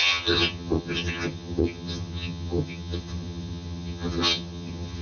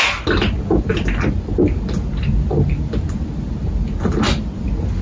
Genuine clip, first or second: second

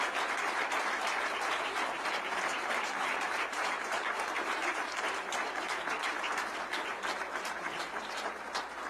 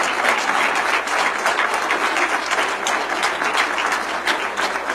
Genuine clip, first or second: second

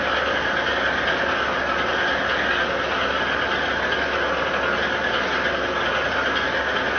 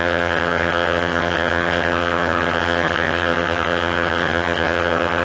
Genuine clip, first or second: first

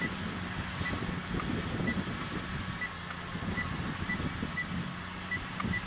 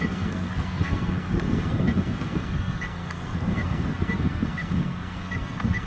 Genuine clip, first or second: first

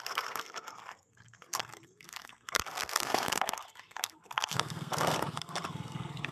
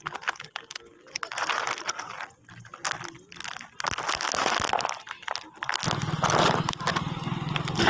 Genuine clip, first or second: second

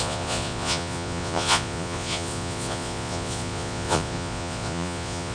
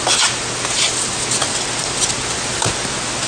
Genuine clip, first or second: second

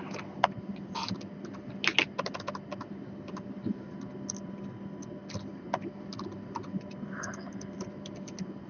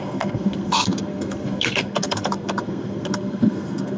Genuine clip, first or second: first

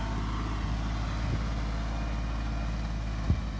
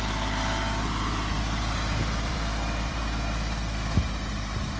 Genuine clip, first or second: first